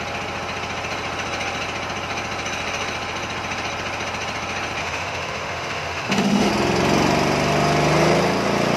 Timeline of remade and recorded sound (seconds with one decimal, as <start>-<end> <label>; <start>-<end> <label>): 0.0-4.8 recorded; 4.8-6.5 remade; 6.5-8.8 recorded